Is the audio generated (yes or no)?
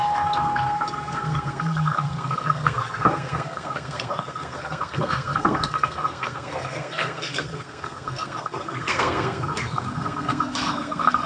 yes